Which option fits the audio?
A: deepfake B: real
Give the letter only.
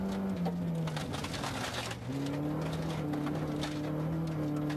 B